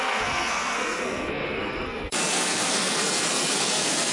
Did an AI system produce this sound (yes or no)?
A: yes